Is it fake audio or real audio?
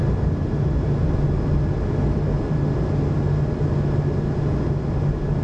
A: real